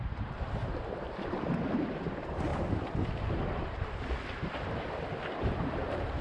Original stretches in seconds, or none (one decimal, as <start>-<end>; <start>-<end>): 2.5-5.3